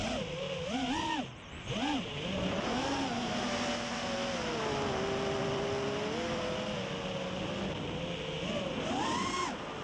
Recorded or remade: recorded